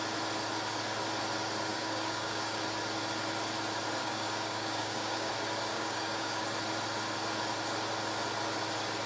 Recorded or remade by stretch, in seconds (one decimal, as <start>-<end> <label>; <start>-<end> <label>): 0.0-1.7 recorded; 1.7-2.6 remade; 2.6-4.0 recorded; 4.0-5.3 remade; 5.3-5.7 recorded; 5.7-6.4 remade; 6.4-9.1 recorded